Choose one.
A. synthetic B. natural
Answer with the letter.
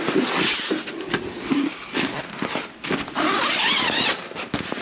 B